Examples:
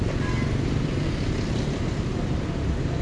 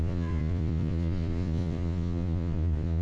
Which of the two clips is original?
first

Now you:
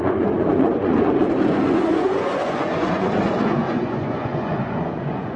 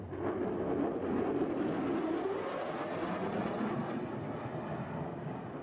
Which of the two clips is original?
second